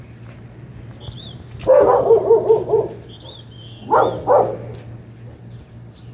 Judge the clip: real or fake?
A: real